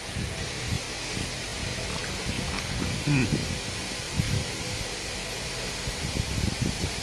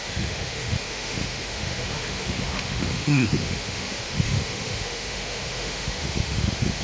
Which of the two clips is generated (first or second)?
second